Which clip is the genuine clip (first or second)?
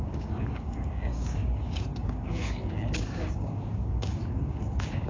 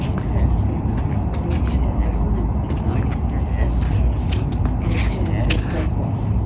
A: second